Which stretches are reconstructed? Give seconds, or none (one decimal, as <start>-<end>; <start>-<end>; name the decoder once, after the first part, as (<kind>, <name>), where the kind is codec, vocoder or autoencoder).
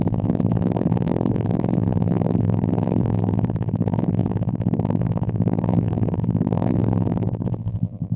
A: 0.0-8.2 (vocoder, BigVGAN v2)